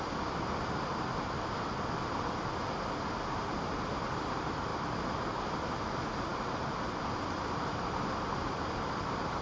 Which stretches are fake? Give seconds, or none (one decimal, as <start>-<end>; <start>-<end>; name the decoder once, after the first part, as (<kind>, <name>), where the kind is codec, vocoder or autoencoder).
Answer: none